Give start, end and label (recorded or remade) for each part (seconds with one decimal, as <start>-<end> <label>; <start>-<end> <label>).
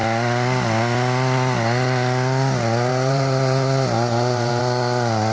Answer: 0.0-2.9 recorded; 2.9-4.6 remade; 4.6-5.3 recorded